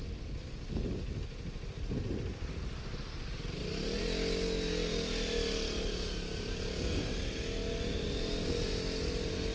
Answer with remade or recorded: recorded